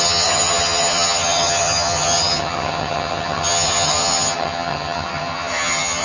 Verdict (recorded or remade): remade